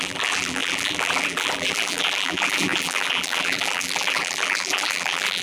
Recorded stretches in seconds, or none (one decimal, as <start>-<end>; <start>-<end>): none